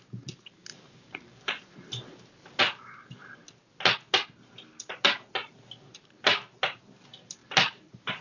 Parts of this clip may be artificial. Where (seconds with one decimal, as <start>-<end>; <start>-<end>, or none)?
0.7-2.6; 7.4-8.2